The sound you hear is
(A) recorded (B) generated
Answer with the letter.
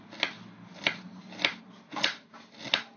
A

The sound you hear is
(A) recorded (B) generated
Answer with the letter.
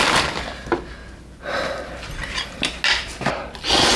A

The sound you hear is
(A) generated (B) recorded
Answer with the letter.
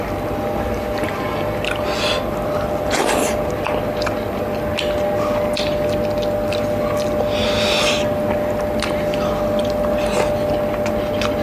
B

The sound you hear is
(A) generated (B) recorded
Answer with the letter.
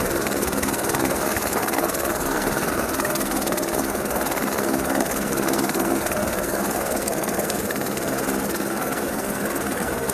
A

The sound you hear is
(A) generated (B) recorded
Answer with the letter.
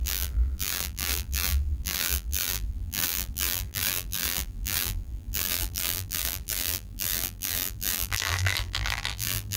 A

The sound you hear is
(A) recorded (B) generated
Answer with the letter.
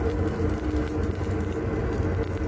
A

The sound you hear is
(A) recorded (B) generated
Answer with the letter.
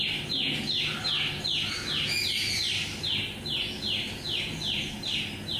A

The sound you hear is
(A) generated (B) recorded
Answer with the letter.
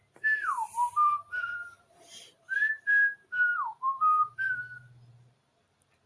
A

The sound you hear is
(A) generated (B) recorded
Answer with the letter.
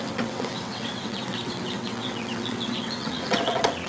A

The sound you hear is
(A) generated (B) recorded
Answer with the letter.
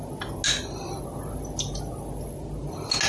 B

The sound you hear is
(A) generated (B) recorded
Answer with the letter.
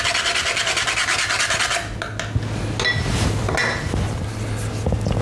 B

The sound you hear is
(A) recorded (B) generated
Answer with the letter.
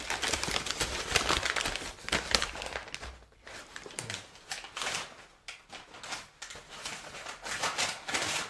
A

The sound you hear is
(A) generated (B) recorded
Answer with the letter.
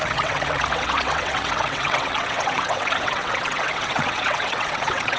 A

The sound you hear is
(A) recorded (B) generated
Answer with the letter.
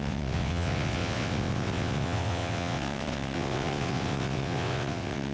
B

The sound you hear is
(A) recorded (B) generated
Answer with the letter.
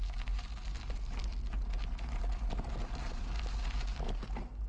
A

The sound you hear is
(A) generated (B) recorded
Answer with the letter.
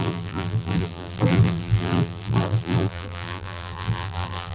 A